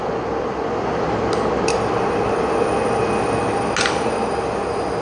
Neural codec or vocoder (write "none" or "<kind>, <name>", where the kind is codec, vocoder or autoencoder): none